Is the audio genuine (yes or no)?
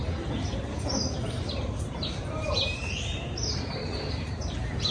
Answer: no